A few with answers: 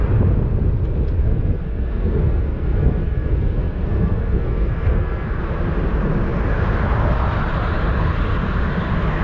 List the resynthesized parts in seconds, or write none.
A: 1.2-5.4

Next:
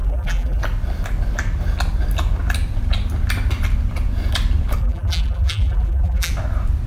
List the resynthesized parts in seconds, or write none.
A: 0.0-0.6; 4.8-6.3

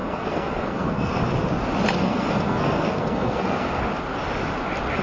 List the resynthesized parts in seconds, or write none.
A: 0.0-1.1; 2.0-3.8

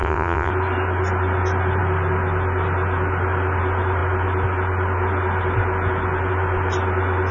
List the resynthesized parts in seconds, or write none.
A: 0.0-0.5

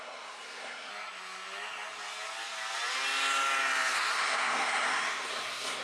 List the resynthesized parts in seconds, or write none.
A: 0.0-0.9; 4.1-5.8